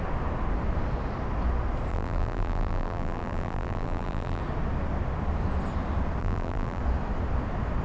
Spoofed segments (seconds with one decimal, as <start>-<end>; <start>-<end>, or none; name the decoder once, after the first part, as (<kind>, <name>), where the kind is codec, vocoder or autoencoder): 1.9-4.4 (vocoder, BigVGAN v2); 6.2-6.8